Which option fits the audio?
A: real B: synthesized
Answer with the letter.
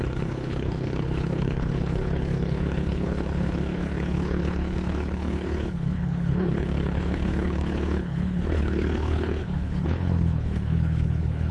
B